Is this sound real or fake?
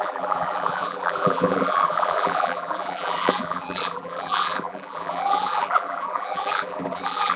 fake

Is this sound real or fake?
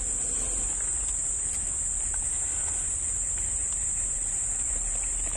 real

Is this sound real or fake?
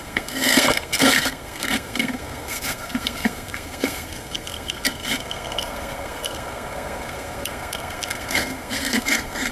fake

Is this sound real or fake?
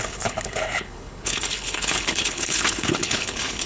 fake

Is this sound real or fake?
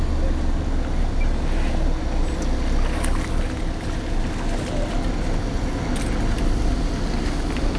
real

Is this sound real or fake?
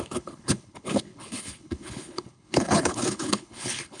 fake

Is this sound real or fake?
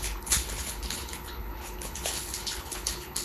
fake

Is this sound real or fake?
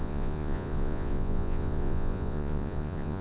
fake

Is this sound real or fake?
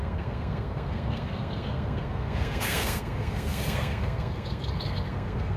fake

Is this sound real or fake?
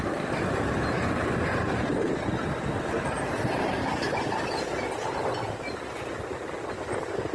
real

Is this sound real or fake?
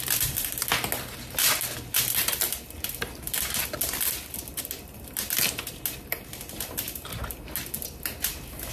real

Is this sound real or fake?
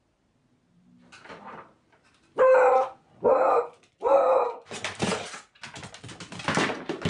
real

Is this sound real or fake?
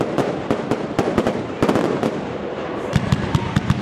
fake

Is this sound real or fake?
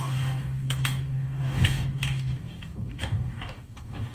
fake